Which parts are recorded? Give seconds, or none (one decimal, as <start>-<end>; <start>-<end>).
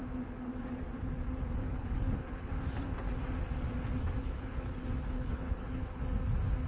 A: 0.0-1.6; 2.5-4.2; 6.0-6.7